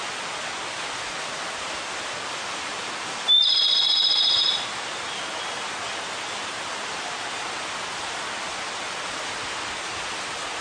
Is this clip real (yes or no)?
yes